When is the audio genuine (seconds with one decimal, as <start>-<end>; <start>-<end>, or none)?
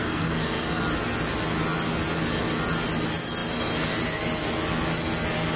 0.8-5.6